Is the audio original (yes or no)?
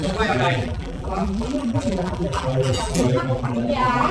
no